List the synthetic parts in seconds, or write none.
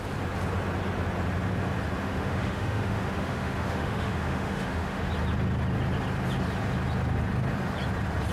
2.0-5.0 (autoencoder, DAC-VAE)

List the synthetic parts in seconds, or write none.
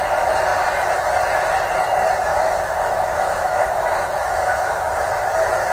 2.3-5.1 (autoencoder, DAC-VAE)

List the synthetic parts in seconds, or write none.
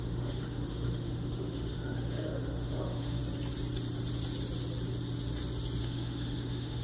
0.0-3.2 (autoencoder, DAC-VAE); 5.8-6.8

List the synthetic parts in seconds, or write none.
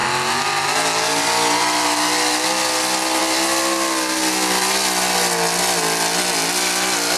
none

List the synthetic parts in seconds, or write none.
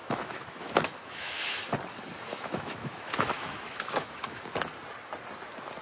0.0-1.4 (autoencoder, DAC-VAE); 2.3-4.4